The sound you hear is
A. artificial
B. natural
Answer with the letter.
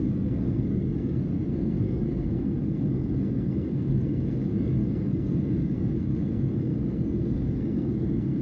A